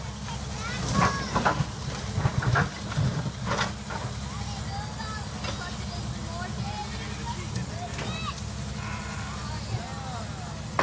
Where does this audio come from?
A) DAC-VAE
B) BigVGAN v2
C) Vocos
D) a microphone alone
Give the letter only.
D